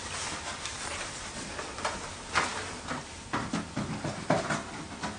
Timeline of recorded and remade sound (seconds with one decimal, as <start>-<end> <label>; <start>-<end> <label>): 0.0-5.2 recorded